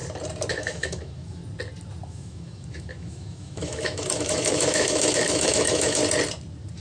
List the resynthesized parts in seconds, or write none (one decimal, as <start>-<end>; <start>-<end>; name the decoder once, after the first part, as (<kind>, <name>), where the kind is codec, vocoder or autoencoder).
0.5-1.4 (autoencoder, DAC-VAE); 2.1-6.0